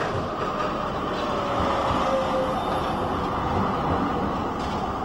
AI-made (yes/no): no